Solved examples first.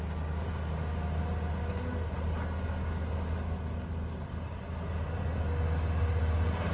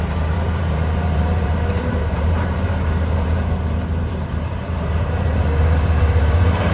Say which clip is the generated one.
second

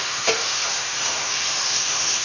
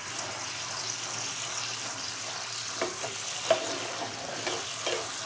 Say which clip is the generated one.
first